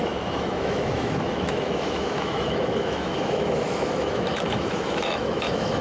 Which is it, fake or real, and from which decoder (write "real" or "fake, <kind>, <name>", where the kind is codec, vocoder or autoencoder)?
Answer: fake, autoencoder, DAC-VAE